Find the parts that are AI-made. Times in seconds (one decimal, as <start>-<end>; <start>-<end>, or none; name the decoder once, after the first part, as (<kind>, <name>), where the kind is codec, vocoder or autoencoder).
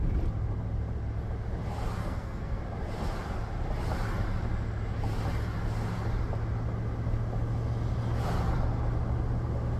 2.0-2.6 (codec, SNAC)